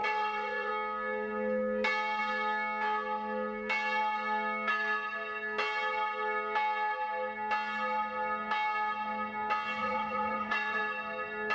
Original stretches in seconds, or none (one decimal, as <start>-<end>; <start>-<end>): 0.7-9.8; 10.8-11.5